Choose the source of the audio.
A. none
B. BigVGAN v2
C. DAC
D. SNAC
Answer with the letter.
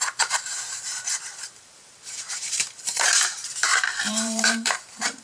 B